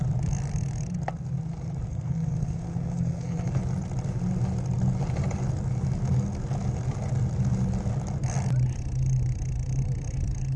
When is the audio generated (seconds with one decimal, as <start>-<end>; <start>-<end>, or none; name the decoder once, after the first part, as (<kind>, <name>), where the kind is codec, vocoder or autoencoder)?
1.9-3.6 (codec, SNAC)